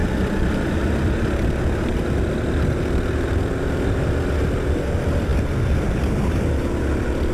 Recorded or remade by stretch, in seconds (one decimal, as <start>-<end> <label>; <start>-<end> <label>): 0.0-7.3 recorded